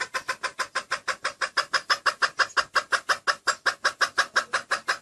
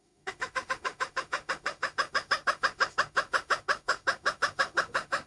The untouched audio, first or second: first